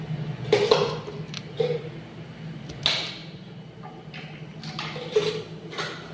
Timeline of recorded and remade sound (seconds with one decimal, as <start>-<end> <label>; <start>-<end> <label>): 0.0-6.1 recorded